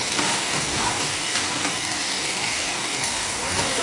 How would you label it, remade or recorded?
remade